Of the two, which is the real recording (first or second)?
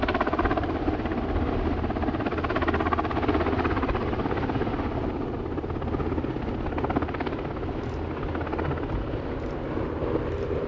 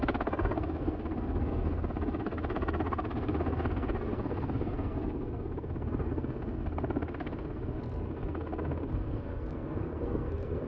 first